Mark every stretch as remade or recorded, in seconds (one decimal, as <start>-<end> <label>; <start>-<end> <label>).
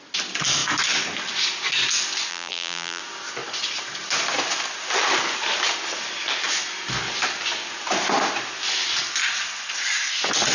0.0-2.3 recorded; 2.3-3.0 remade; 3.0-10.5 recorded